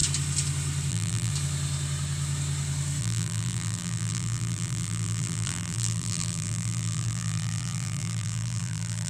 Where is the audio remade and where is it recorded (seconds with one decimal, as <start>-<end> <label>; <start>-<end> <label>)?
0.0-0.9 recorded; 0.9-1.3 remade; 1.3-3.0 recorded; 3.0-9.1 remade

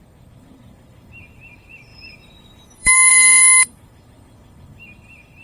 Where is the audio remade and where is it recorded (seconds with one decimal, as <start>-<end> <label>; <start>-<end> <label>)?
0.0-5.4 remade

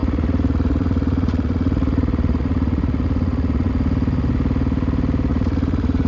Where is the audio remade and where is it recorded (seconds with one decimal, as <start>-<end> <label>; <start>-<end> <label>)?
0.0-3.7 remade; 3.7-5.3 recorded; 5.3-6.1 remade

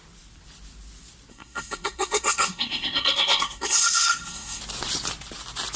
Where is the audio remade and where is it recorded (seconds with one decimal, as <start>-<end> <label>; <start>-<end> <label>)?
0.0-1.3 recorded; 1.3-4.6 remade; 4.6-5.8 recorded

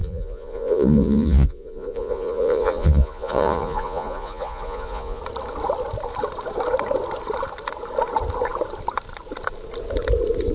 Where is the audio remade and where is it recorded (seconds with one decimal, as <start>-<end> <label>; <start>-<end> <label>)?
0.0-5.2 remade; 5.2-10.5 recorded

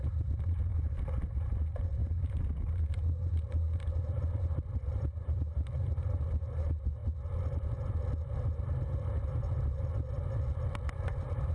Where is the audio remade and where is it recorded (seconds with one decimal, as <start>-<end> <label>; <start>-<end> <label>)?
0.0-7.0 remade; 7.0-10.9 recorded; 10.9-11.5 remade

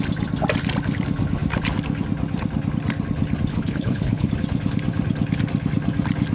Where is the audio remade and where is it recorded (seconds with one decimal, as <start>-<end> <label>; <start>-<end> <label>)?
0.0-3.5 recorded; 3.5-4.3 remade; 4.3-6.3 recorded